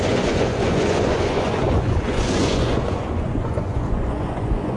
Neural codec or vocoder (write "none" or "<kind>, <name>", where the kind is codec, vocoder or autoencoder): vocoder, Vocos